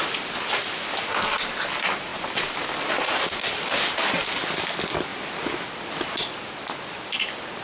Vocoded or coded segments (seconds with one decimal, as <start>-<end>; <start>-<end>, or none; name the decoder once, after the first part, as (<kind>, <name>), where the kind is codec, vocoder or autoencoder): none